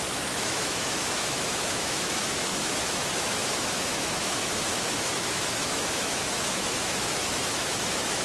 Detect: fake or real fake